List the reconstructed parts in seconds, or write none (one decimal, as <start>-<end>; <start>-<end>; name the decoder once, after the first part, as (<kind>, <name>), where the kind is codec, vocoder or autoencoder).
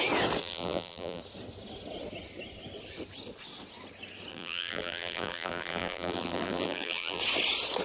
0.4-1.2 (vocoder, BigVGAN v2); 4.3-7.2